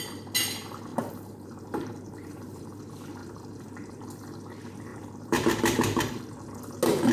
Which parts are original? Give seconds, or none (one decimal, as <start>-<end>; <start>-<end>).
0.0-0.9; 2.8-3.2; 3.9-4.9; 6.2-7.1